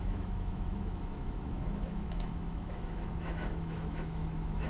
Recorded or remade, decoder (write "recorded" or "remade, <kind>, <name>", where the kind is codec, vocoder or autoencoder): remade, autoencoder, DAC-VAE